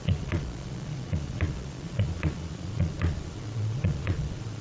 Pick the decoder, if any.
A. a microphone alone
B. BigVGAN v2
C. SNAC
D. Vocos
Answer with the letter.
D